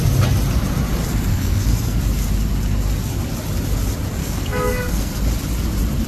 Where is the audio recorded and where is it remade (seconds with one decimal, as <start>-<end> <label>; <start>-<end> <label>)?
0.0-1.3 recorded; 1.3-2.0 remade; 2.0-4.2 recorded; 4.2-5.1 remade; 5.1-6.1 recorded